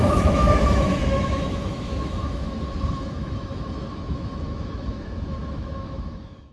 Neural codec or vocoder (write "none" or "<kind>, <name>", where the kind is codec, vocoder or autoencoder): autoencoder, DAC-VAE